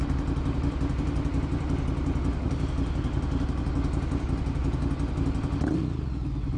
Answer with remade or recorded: recorded